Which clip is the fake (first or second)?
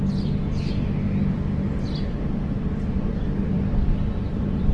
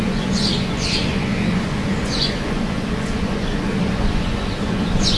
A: second